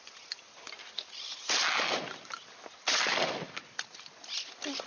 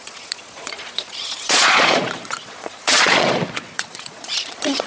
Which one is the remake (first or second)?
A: second